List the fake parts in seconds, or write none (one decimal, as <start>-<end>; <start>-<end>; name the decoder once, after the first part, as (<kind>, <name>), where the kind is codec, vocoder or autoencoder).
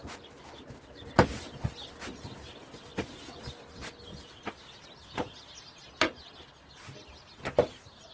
none